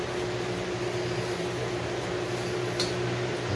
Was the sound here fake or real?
real